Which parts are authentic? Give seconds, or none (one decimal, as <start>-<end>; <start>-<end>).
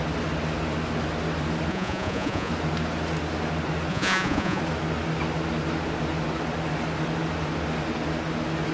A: 0.0-1.7; 2.5-3.9; 4.6-8.7